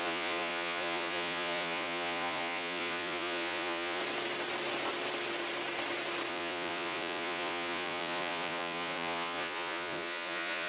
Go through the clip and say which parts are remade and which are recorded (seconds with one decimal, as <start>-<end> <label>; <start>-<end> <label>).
0.0-4.0 remade; 4.0-6.3 recorded; 6.3-10.7 remade